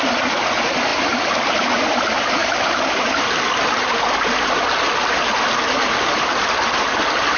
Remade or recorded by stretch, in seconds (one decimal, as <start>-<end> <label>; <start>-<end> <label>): 0.0-7.4 recorded